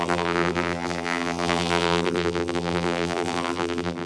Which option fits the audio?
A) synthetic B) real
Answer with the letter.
A